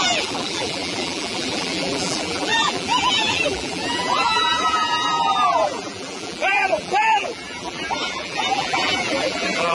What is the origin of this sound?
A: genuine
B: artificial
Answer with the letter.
B